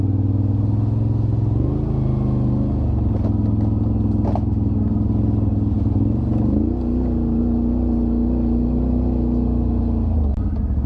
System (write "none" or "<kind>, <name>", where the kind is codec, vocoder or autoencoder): none